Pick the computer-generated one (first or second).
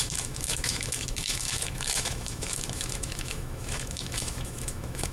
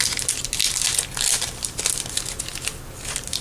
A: first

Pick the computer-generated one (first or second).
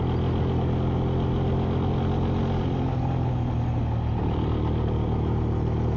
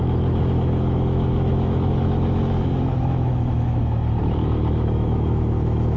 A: second